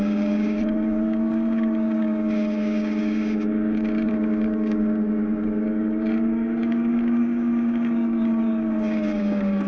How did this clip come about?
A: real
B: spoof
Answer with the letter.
B